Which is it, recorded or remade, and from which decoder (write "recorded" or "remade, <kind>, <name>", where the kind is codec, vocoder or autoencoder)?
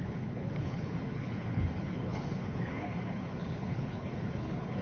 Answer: remade, codec, HILCodec